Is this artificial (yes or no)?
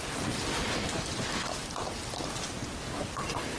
no